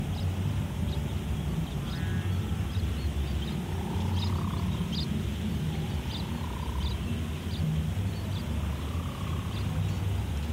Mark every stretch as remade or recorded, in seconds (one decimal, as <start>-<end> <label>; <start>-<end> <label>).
0.0-10.5 recorded